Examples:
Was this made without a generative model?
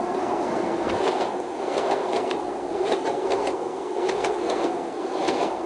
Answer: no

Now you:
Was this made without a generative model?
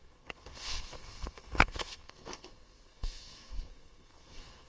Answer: no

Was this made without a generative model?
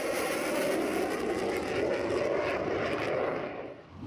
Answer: yes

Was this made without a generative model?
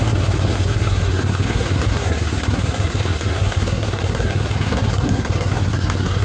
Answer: no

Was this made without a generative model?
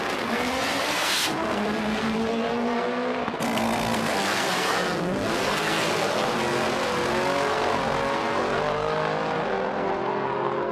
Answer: no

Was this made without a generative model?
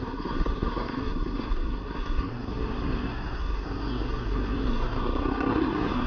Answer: no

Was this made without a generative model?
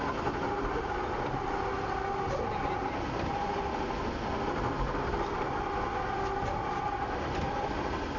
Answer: yes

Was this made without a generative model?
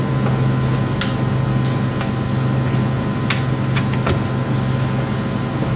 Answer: yes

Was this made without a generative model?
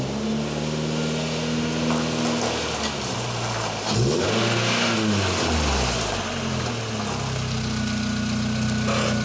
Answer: yes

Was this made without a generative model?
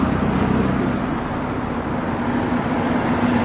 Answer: yes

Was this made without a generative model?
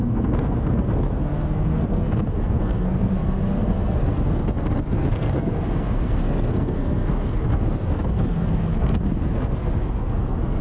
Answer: no